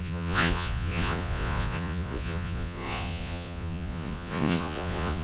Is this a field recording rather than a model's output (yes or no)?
no